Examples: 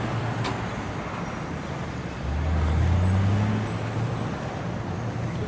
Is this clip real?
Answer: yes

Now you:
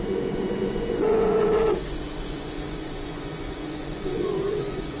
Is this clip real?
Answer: no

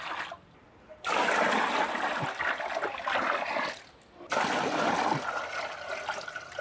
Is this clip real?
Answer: yes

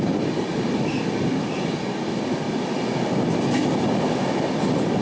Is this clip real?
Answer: yes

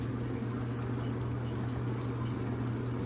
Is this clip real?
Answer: yes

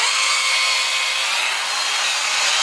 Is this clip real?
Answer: yes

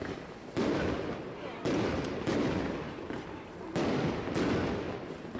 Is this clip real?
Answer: yes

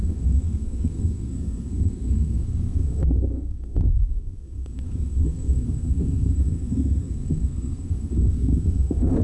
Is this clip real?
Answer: no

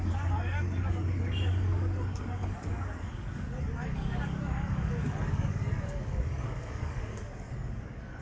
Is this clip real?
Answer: no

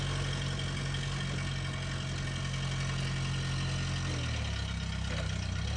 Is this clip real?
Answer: yes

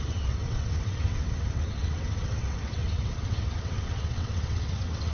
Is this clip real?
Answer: no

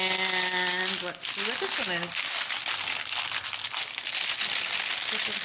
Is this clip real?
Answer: yes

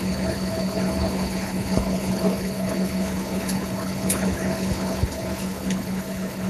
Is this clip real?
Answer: no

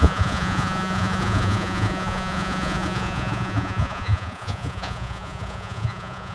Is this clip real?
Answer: no